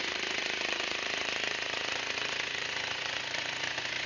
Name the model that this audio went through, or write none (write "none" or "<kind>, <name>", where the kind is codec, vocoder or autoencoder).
vocoder, Vocos